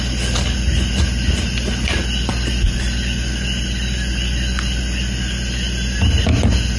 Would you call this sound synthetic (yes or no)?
no